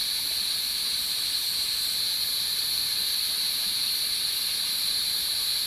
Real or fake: fake